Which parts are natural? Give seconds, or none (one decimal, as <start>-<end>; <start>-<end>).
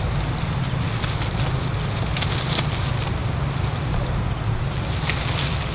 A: 0.0-5.7